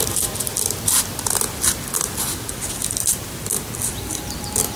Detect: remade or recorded recorded